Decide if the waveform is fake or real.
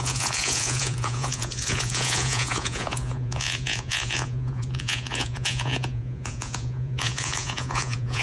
fake